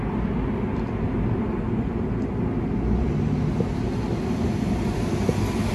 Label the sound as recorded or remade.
recorded